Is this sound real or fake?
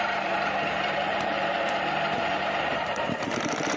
fake